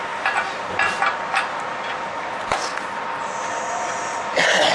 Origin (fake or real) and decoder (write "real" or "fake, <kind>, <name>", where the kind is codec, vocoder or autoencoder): real